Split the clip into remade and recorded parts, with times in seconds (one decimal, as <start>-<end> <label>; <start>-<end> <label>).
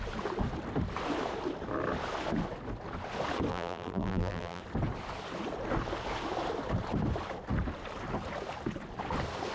0.0-3.5 recorded; 3.5-4.6 remade; 4.6-9.5 recorded